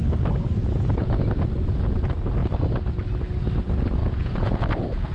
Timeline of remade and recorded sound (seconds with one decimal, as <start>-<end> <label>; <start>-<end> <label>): 0.0-0.6 recorded; 0.6-1.3 remade; 1.3-4.0 recorded; 4.0-4.6 remade; 4.6-5.1 recorded